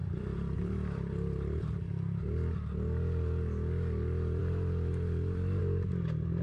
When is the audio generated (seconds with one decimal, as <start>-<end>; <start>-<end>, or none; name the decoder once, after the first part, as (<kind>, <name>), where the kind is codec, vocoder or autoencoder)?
0.0-1.7 (vocoder, BigVGAN v2); 4.4-5.6